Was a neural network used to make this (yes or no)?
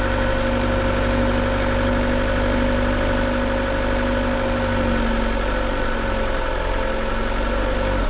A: no